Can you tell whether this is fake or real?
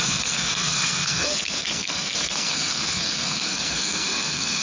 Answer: fake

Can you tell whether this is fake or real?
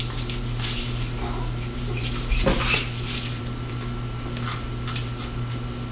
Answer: real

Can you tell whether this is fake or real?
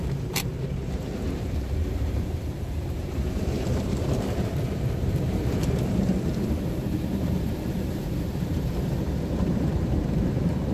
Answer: fake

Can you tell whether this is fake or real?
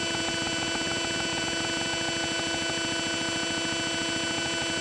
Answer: real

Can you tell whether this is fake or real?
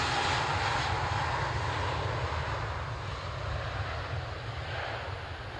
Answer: real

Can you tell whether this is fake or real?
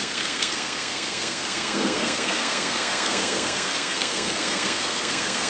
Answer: fake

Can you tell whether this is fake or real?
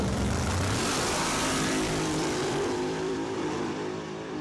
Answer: fake